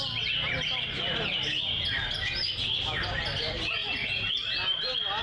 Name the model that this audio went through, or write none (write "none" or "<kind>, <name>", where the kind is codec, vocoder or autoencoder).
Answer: none